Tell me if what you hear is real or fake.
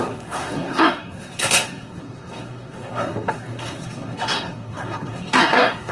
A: fake